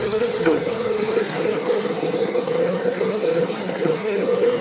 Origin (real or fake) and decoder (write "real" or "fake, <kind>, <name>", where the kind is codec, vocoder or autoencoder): fake, codec, SNAC